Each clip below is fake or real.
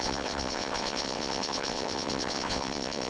fake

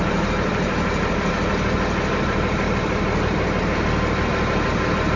real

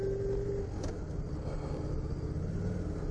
real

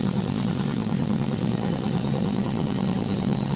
fake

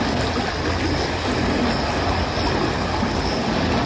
real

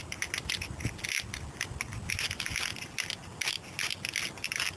real